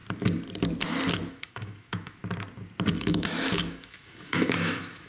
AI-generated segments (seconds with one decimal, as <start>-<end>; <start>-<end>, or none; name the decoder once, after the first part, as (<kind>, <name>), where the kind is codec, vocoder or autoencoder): 1.3-2.2 (autoencoder, DAC-VAE); 2.9-5.1